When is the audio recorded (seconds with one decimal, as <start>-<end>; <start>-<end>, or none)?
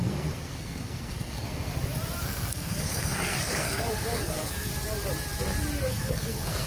1.7-2.2; 4.7-5.9